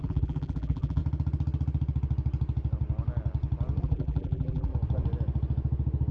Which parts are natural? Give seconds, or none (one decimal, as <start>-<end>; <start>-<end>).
1.0-3.8; 4.7-6.1